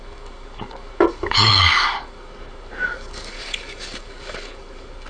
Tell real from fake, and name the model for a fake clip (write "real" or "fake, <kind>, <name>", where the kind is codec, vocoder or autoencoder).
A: fake, codec, DAC